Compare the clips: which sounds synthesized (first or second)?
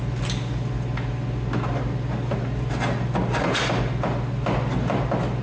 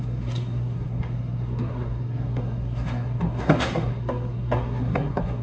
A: second